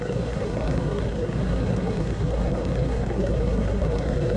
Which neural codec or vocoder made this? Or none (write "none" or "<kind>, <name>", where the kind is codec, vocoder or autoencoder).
codec, SNAC